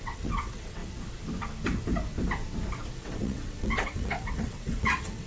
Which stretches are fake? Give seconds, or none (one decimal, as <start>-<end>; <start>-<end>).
0.0-0.8; 2.9-5.3